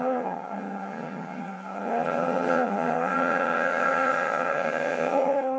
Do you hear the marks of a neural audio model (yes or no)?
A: yes